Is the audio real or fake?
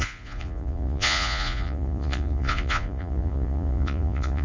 fake